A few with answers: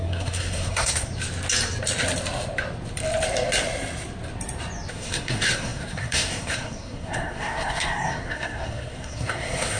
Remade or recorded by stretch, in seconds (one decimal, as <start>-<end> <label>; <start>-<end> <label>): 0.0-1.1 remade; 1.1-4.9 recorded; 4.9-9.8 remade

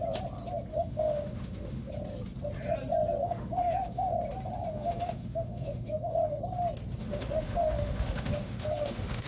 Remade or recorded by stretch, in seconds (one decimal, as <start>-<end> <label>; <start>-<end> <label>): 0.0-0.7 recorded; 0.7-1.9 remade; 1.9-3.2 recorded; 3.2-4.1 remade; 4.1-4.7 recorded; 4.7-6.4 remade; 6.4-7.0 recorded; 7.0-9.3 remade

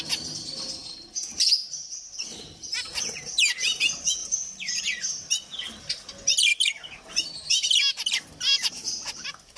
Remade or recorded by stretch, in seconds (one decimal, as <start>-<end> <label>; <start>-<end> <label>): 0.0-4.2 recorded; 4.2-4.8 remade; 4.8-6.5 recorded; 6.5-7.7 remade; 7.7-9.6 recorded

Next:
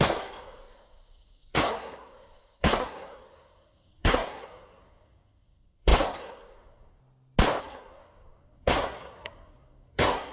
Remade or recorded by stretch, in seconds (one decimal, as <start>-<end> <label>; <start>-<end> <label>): 0.0-7.0 remade; 7.0-7.6 recorded; 7.6-10.3 remade

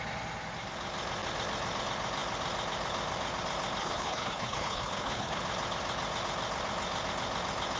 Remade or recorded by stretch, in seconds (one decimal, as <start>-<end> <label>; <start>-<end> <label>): 0.0-3.8 recorded; 3.8-5.4 remade; 5.4-7.8 recorded

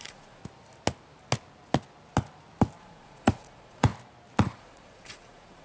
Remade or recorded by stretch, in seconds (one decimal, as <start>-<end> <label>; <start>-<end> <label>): 0.0-0.4 remade; 0.4-2.8 recorded; 2.8-3.9 remade; 3.9-4.6 recorded; 4.6-5.6 remade

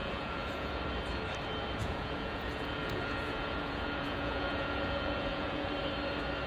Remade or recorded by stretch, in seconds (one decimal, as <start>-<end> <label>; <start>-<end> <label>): 0.0-0.8 remade; 0.8-1.8 recorded; 1.8-5.7 remade; 5.7-6.5 recorded